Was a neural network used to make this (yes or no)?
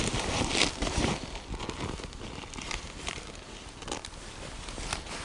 no